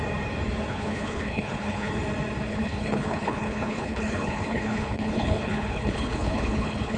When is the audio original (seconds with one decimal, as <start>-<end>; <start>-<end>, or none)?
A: 0.0-0.7; 1.9-2.5